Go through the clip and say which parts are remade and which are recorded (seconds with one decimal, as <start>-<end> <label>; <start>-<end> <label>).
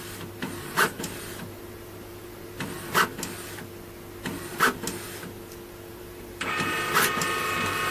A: 0.0-3.1 remade; 3.1-5.9 recorded; 5.9-7.9 remade